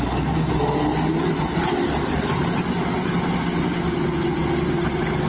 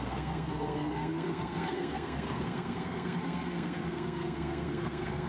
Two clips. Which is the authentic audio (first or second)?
first